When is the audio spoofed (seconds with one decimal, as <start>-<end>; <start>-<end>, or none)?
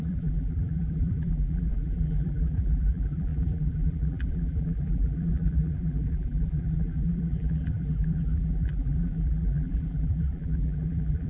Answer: 0.0-11.3